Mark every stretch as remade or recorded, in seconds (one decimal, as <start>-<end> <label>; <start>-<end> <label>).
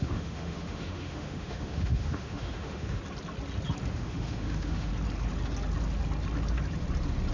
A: 0.0-3.0 remade; 3.0-3.9 recorded; 3.9-4.9 remade; 4.9-7.3 recorded